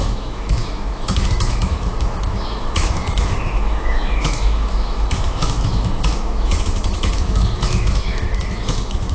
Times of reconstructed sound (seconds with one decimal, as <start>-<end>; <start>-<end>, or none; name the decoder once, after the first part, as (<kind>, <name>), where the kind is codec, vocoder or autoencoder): 0.0-9.1 (autoencoder, DAC-VAE)